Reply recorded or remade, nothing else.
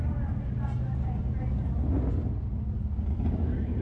recorded